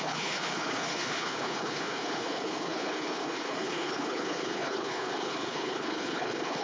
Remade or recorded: remade